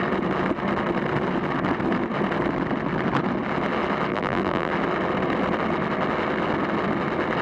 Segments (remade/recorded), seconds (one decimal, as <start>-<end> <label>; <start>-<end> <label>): 0.0-4.1 recorded; 4.1-4.7 remade; 4.7-7.4 recorded